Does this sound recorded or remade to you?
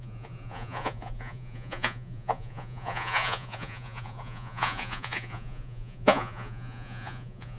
remade